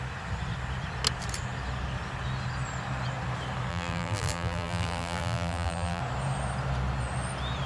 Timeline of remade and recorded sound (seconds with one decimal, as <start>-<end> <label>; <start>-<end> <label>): 0.0-3.7 recorded; 3.7-6.0 remade; 6.0-7.7 recorded

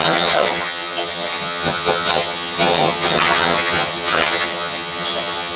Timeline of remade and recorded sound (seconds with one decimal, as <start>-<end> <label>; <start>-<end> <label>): 0.0-5.6 remade

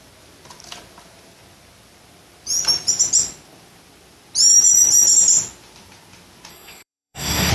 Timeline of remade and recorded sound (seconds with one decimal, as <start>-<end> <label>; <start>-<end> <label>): 0.0-6.5 recorded; 6.5-7.5 remade